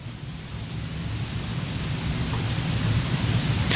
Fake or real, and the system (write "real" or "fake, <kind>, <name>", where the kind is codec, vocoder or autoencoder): real